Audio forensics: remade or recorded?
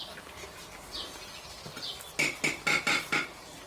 recorded